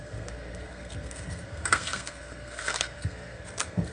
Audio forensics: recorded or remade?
remade